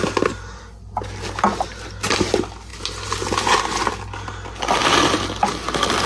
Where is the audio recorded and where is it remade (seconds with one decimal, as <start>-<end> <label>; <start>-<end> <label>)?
0.0-6.1 recorded